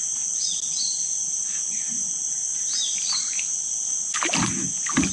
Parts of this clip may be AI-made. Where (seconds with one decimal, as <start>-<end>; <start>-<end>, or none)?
none